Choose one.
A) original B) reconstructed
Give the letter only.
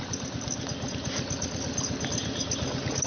A